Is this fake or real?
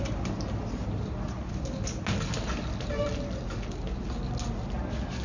real